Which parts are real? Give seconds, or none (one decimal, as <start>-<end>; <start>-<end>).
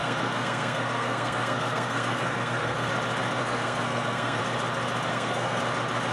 2.9-3.4; 4.4-5.1; 5.6-6.1